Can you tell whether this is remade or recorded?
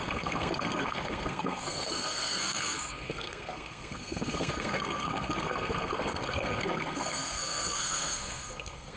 remade